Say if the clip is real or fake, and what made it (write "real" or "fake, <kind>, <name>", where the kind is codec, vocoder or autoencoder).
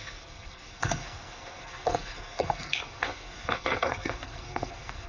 fake, codec, SNAC